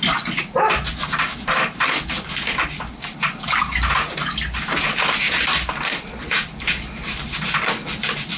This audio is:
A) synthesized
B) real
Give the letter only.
B